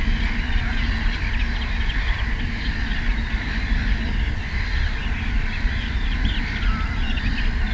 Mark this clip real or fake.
fake